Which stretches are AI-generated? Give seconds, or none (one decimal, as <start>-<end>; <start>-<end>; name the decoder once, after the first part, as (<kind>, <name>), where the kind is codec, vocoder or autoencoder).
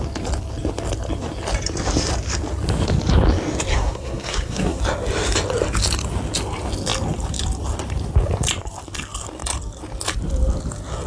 3.7-4.8 (codec, SNAC)